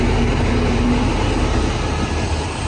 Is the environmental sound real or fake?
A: real